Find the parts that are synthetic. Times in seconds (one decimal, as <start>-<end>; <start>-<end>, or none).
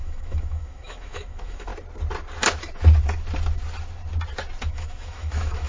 0.0-1.7; 4.6-5.7